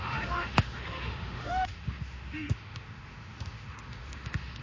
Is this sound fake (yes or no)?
yes